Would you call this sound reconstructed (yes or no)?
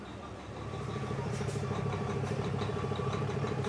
yes